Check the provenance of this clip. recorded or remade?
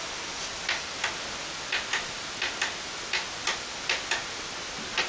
recorded